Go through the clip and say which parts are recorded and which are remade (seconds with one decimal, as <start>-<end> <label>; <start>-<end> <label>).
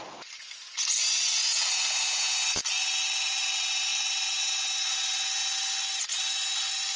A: 0.0-1.3 recorded; 1.3-2.6 remade; 2.6-7.0 recorded